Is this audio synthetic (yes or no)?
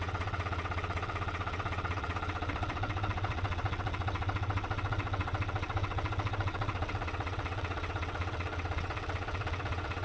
yes